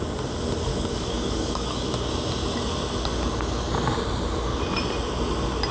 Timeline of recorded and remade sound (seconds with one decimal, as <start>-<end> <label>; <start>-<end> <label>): 0.0-0.7 recorded; 0.7-2.1 remade; 2.1-5.7 recorded